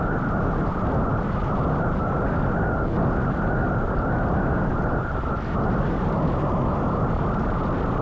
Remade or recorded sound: recorded